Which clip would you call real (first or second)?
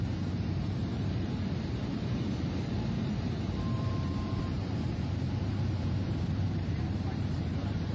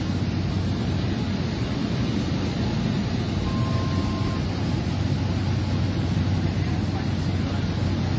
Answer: second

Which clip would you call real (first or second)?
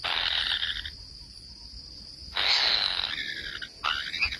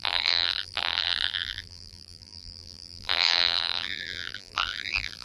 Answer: first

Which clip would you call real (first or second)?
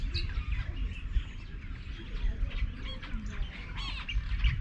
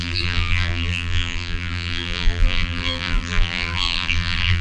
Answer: first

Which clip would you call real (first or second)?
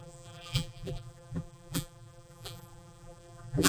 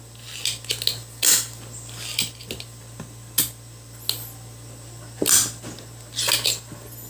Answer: second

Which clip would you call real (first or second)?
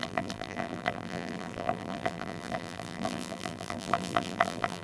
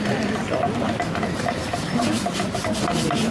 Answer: second